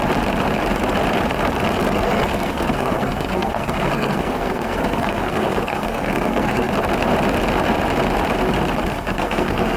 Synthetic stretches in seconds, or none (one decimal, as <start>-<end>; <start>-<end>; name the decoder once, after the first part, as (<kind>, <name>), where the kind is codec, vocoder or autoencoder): 1.8-6.7 (codec, SNAC); 8.9-9.8